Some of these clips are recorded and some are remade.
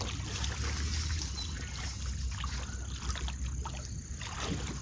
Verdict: recorded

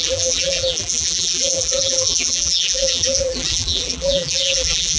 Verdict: remade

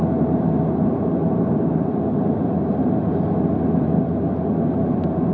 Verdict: recorded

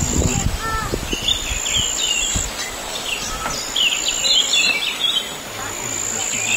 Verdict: recorded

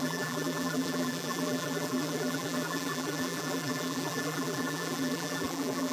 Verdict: remade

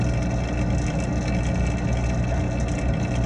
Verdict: recorded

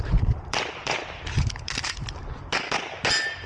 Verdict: remade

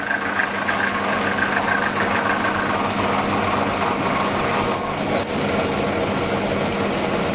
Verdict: recorded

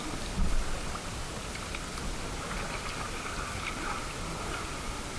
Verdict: recorded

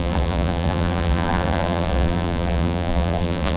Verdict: remade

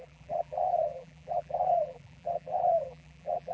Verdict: remade